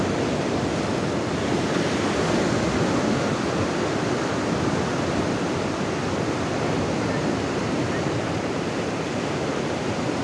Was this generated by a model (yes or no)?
no